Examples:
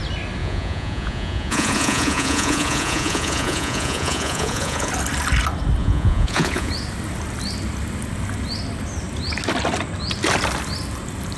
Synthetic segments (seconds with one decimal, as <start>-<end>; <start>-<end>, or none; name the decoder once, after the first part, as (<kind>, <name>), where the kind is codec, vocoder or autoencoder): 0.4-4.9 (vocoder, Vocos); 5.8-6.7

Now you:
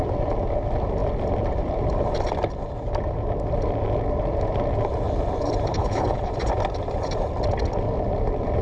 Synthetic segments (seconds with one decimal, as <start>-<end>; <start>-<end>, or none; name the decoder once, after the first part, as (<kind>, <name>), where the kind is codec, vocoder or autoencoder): 5.7-6.3 (codec, HILCodec)

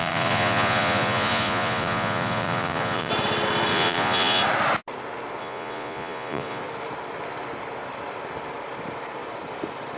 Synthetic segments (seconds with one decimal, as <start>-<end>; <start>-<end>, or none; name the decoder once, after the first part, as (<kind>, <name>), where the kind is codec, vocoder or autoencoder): 0.0-3.1 (vocoder, Vocos); 3.7-4.4; 5.4-6.6

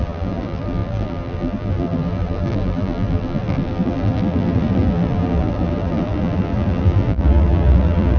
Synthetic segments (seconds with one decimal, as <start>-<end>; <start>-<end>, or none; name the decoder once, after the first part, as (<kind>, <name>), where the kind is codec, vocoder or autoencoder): 0.0-8.2 (vocoder, BigVGAN v2)

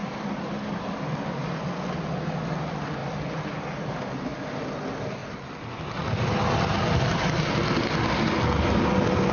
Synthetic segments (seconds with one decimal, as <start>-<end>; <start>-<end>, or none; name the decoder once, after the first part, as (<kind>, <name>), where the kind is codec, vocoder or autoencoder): none

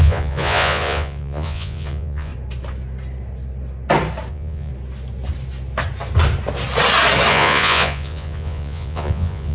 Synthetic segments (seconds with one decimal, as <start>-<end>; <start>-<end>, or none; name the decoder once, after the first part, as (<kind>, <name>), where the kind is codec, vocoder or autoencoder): 0.0-2.3 (vocoder, Vocos); 4.3-4.7; 7.3-9.5

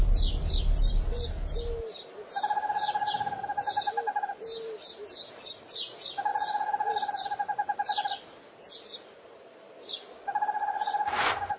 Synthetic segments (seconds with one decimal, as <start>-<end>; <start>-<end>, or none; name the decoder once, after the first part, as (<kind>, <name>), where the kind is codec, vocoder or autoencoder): 6.3-6.9 (vocoder, Vocos); 10.6-11.6